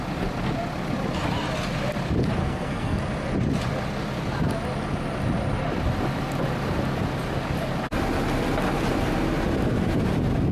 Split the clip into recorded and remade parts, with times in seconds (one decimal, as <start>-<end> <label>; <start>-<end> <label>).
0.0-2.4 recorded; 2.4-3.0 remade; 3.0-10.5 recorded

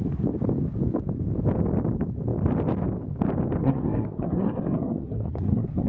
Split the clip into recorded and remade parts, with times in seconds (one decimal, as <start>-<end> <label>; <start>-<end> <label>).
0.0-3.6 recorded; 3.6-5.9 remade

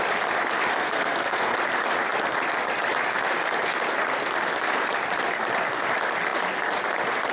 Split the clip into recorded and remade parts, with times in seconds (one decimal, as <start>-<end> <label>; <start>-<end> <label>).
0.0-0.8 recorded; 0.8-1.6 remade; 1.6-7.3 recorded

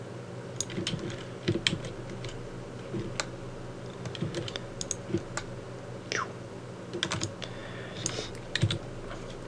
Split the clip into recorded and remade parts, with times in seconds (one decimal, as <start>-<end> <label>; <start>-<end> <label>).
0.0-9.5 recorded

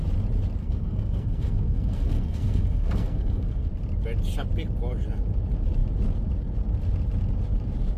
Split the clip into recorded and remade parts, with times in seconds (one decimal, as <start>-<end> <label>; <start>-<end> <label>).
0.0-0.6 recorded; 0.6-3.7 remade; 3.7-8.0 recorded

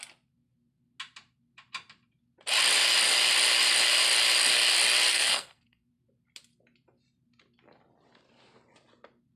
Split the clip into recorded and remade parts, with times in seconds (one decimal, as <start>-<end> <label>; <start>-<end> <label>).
0.0-5.1 recorded; 5.1-5.9 remade; 5.9-9.4 recorded

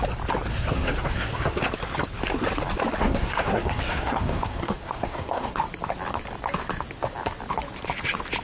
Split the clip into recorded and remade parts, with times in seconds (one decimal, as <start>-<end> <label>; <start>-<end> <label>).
0.0-0.5 recorded; 0.5-1.6 remade; 1.6-3.0 recorded; 3.0-5.5 remade; 5.5-8.4 recorded